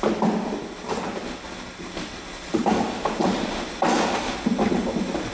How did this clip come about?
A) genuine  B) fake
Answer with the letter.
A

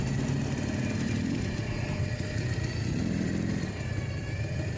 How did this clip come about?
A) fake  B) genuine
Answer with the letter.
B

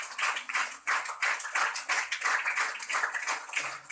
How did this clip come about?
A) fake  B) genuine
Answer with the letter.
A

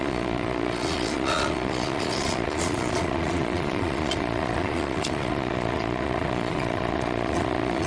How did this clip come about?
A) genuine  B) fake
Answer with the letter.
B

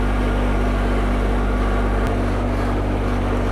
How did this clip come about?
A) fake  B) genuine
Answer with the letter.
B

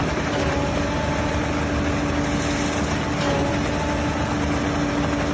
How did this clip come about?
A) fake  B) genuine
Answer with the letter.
B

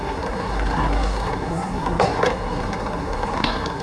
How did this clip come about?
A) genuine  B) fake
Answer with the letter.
B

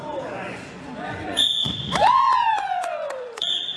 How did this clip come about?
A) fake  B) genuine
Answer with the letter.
A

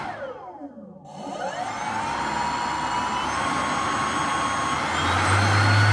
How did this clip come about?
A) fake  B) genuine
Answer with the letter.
B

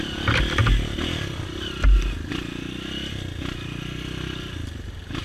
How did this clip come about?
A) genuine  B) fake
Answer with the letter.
A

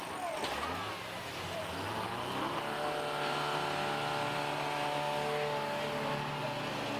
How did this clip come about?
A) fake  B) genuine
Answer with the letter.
B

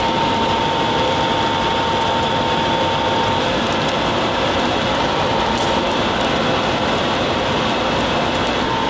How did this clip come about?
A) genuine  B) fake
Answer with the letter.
A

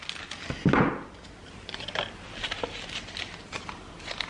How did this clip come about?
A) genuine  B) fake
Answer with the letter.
A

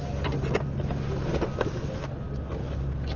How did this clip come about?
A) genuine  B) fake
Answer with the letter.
A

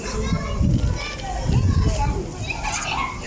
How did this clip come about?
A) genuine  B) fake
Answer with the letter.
A